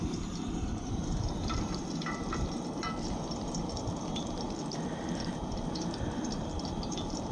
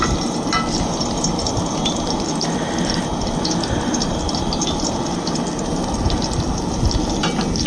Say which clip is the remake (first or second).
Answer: first